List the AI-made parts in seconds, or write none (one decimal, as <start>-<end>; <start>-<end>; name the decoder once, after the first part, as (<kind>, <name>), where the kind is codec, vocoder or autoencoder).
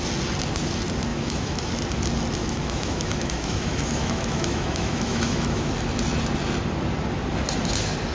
1.1-1.7 (autoencoder, DAC-VAE); 2.4-5.7